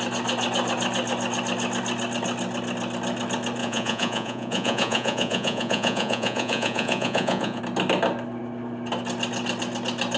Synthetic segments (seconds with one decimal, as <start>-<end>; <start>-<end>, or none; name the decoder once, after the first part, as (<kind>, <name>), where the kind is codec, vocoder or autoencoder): 3.6-7.6 (vocoder, Vocos)